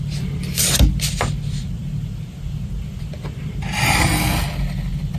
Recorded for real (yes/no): yes